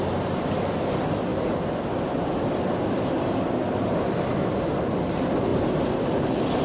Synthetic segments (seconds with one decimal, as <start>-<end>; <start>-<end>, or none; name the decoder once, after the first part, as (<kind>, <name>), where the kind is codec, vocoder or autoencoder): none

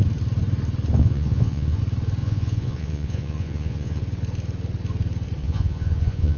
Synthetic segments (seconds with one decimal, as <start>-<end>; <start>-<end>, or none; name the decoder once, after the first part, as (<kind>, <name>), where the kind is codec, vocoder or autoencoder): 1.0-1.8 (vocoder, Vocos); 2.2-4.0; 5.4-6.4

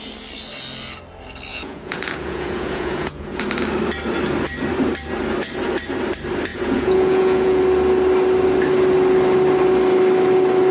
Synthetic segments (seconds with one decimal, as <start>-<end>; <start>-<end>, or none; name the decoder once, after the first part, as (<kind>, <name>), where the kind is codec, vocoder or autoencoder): 1.5-3.4 (vocoder, Vocos); 6.5-7.6